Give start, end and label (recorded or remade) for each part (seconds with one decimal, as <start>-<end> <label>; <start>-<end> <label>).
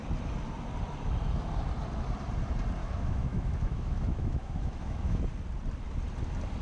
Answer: 0.0-2.8 recorded; 2.8-5.2 remade; 5.2-6.6 recorded